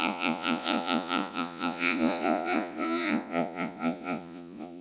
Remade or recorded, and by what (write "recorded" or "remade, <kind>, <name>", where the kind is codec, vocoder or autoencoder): remade, vocoder, Vocos